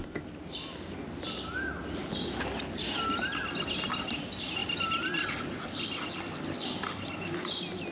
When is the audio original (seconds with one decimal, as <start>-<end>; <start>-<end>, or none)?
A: 0.0-7.9